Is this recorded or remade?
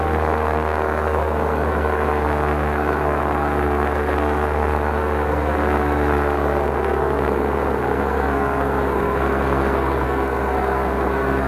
remade